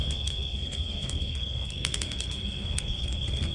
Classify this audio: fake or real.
fake